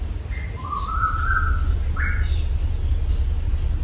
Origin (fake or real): real